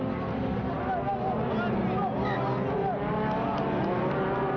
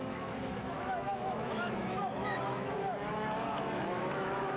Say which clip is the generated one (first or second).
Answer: second